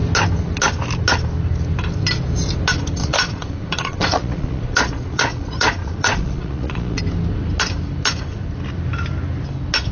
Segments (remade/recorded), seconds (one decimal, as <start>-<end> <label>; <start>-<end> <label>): 0.0-3.0 recorded; 3.0-7.0 remade; 7.0-9.9 recorded